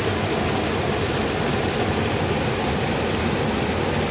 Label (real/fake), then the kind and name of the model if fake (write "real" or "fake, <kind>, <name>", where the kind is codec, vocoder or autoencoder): real